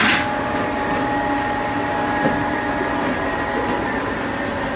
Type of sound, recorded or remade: recorded